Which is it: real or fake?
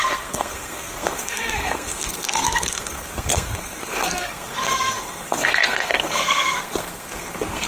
fake